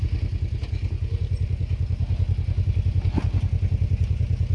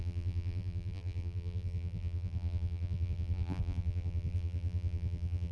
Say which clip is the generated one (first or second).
second